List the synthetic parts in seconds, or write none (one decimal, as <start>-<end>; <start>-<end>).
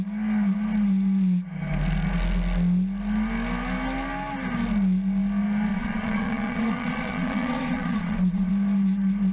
5.7-8.5